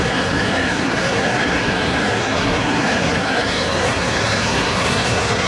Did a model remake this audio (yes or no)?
yes